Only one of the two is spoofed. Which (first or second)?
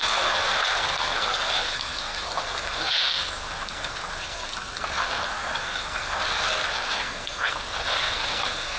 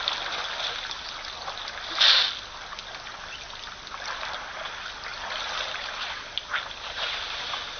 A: first